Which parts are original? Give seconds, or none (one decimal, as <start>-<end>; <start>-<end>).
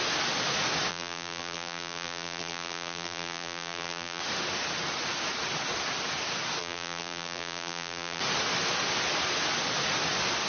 0.0-0.9; 4.2-6.6; 8.2-10.5